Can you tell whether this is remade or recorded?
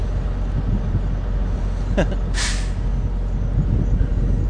recorded